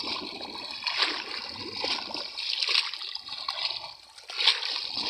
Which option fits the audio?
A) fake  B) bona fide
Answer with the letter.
B